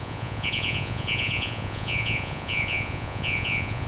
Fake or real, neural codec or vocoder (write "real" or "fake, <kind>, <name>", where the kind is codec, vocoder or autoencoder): fake, vocoder, Vocos